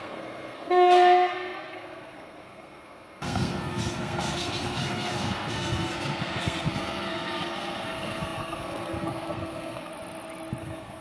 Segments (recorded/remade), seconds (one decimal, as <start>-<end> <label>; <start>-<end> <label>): 0.0-9.9 remade; 9.9-10.6 recorded; 10.6-11.0 remade